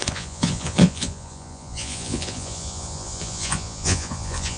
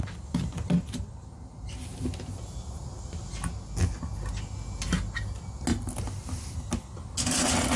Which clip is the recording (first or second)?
second